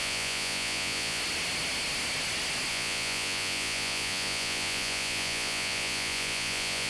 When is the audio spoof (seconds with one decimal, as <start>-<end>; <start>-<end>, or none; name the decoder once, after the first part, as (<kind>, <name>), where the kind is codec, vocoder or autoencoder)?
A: 0.0-1.2 (vocoder, Vocos); 2.7-6.9